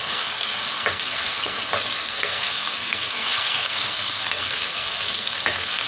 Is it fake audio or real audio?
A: fake